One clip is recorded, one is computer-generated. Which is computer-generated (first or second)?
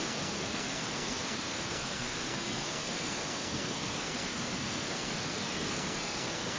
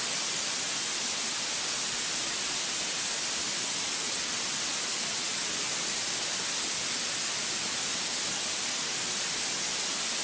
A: first